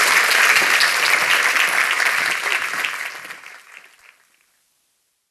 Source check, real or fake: real